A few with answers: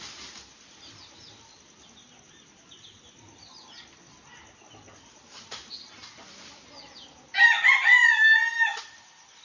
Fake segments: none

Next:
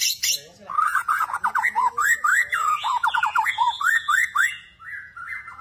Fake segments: 0.0-5.6 (vocoder, Vocos)

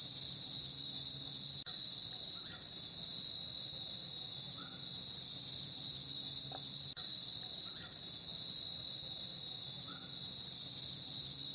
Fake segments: none

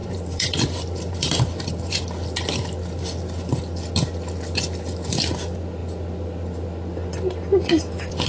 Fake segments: 0.0-2.0 (vocoder, BigVGAN v2)

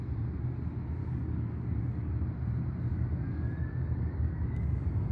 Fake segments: 1.0-2.1 (codec, DAC); 2.9-5.1

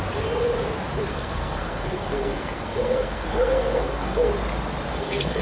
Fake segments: 1.1-4.3 (codec, SNAC); 4.9-5.4

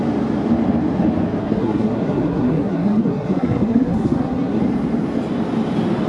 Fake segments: 1.4-4.6 (codec, SNAC)